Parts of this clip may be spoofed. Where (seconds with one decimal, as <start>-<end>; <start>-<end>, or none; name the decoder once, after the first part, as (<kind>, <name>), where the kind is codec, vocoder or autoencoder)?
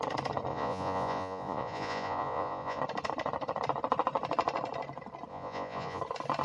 0.5-2.8 (vocoder, Vocos); 5.3-6.0